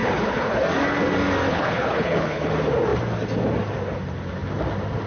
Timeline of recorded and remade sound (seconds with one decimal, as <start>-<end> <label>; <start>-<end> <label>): 0.0-0.6 remade; 0.6-1.5 recorded; 1.5-2.5 remade; 2.5-5.1 recorded